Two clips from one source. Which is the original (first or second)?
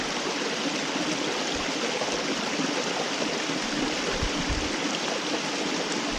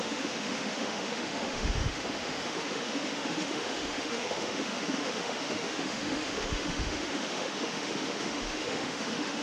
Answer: first